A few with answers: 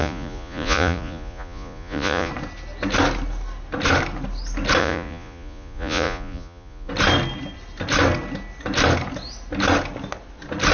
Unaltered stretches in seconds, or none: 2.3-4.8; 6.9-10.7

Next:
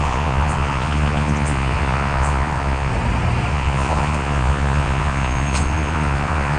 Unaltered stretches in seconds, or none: 2.9-3.5

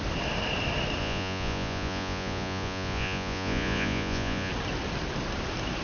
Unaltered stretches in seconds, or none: 0.0-1.0; 4.5-5.8

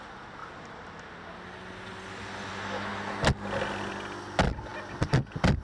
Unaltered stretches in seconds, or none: 0.0-5.6